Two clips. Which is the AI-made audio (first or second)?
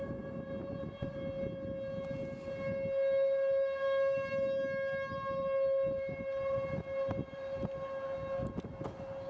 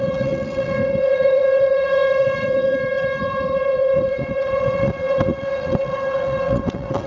second